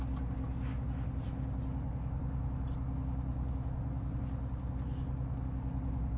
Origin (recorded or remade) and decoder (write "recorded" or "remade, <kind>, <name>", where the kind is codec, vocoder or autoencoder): recorded